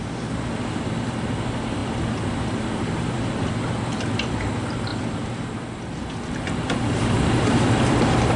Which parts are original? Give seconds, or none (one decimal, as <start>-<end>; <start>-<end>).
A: 0.0-4.9